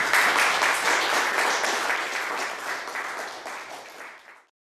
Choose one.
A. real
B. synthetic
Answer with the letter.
A